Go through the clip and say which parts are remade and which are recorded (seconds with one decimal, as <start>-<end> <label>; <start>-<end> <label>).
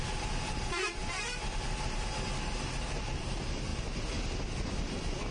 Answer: 0.0-5.3 recorded